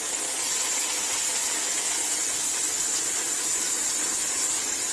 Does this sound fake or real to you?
real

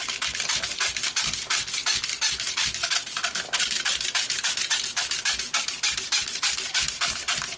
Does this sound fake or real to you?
real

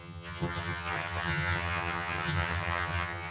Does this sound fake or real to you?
fake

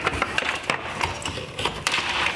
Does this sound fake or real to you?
real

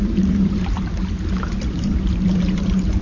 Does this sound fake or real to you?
fake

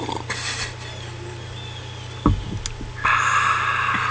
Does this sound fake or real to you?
real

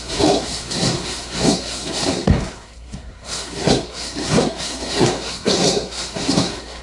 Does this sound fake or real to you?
fake